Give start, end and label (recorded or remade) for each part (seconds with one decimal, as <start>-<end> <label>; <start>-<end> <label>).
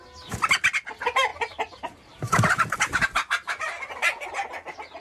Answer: 0.0-1.3 recorded; 1.3-4.3 remade; 4.3-5.0 recorded